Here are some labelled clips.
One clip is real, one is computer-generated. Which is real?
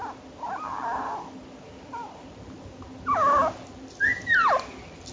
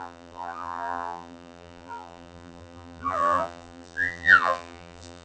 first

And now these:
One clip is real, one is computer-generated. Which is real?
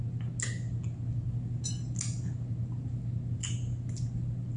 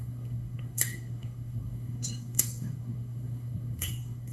first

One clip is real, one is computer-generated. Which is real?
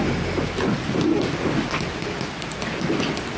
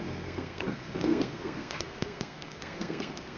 first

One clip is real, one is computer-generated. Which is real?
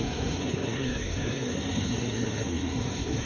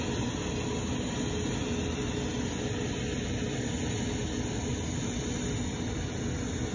second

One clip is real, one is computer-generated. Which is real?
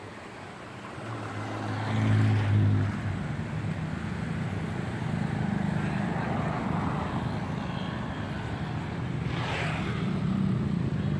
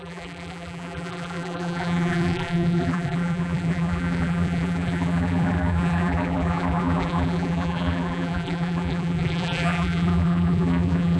first